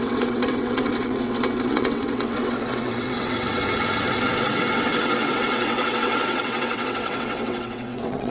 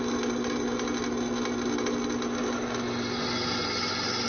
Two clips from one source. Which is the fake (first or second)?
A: first